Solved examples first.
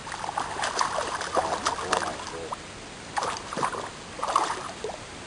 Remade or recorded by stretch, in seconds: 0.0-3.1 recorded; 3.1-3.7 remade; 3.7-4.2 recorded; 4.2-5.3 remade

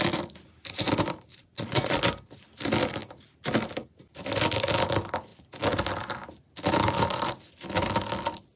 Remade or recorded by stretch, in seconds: 0.0-1.3 recorded; 1.3-2.0 remade; 2.0-8.6 recorded

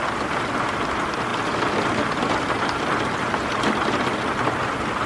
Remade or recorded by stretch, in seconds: 0.0-5.1 recorded

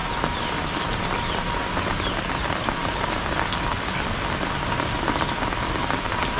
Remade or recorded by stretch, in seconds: 0.0-6.4 recorded

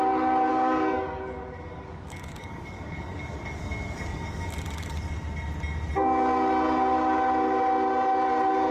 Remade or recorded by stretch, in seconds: 0.0-0.5 recorded; 0.5-4.9 remade; 4.9-8.7 recorded

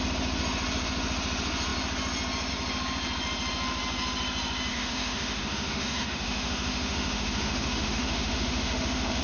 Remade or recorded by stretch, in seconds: 0.0-4.7 recorded; 4.7-9.2 remade

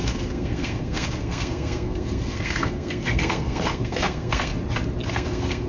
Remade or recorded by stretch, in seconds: 0.0-4.5 remade; 4.5-5.1 recorded; 5.1-5.7 remade